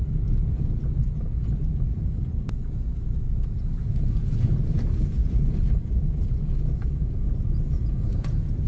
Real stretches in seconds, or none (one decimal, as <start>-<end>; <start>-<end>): none